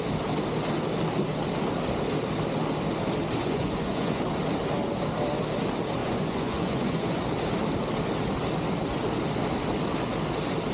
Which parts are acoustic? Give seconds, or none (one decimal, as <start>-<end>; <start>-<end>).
0.0-3.4; 4.2-6.0; 7.2-10.7